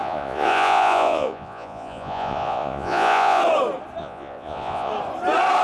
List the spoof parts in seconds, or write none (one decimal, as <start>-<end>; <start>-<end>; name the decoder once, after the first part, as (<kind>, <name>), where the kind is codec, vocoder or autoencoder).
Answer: 0.0-3.4 (vocoder, Vocos); 4.0-4.9